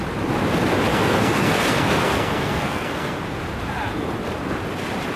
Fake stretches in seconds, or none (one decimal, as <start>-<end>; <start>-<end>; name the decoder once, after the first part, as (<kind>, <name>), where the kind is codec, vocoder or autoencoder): 0.9-3.2 (codec, SNAC)

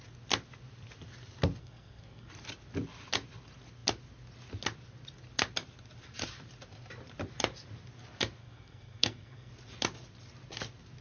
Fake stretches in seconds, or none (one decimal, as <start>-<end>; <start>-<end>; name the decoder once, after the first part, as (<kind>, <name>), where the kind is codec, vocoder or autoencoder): 1.6-2.3 (codec, SNAC); 8.4-9.5

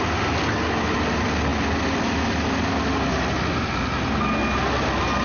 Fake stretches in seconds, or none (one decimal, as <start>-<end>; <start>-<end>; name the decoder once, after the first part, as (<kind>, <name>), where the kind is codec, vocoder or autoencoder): none

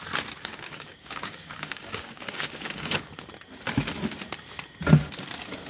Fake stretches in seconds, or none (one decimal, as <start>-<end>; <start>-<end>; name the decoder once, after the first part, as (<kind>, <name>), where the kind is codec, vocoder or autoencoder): 0.4-3.1 (codec, DAC)

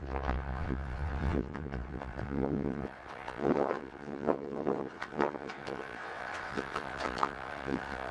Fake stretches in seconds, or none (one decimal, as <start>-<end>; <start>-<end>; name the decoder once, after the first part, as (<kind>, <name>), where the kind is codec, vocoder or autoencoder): 0.0-8.1 (vocoder, WaveNeXt)

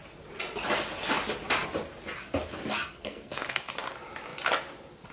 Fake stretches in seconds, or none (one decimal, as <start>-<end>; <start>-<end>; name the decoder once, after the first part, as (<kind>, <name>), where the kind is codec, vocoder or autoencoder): 2.7-3.7 (codec, SNAC)